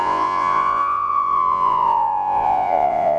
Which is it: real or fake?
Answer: fake